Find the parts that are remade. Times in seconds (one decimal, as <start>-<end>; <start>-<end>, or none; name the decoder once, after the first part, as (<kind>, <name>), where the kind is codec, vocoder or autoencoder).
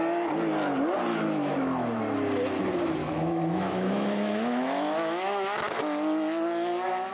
1.1-2.0 (autoencoder, DAC-VAE); 3.0-5.8